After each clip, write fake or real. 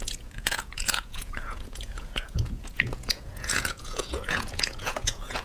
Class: fake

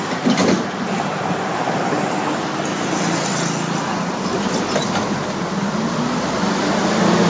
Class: real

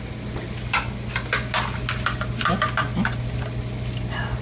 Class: real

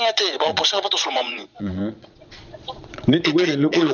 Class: fake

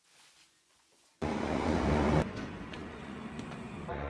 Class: fake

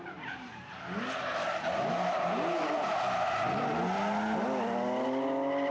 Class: real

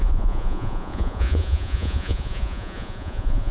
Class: fake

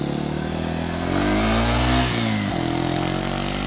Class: real